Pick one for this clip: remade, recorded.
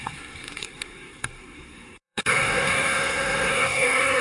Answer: remade